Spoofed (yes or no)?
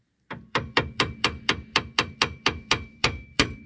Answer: yes